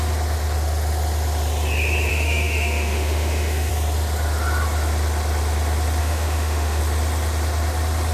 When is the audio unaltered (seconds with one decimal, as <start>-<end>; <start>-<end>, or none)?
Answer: 0.0-2.1; 3.7-6.0; 6.8-8.1